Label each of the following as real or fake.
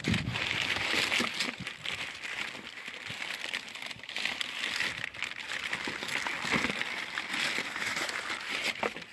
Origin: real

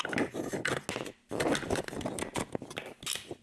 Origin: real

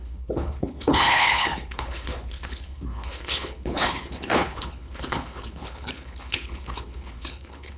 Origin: fake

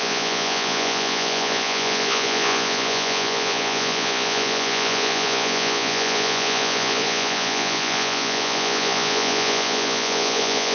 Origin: fake